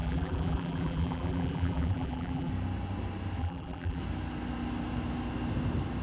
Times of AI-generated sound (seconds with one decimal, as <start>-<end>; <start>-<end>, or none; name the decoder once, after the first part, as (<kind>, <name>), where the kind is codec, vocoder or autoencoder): 0.0-2.5 (vocoder, BigVGAN v2); 3.4-4.0

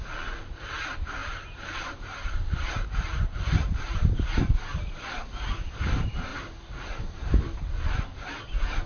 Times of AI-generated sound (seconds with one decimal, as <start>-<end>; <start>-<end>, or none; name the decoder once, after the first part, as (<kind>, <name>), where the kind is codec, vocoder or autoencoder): 1.2-4.6 (vocoder, BigVGAN v2); 6.3-6.8

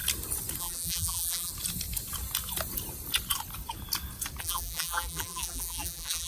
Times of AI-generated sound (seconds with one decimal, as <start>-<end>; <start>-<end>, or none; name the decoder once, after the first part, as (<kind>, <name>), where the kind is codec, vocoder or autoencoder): 0.6-1.5 (vocoder, BigVGAN v2); 4.4-6.3

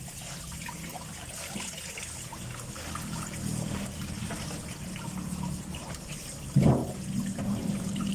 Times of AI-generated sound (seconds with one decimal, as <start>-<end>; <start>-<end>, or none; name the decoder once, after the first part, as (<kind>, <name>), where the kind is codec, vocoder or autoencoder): 0.0-0.9 (vocoder, BigVGAN v2); 5.8-6.8; 7.4-8.1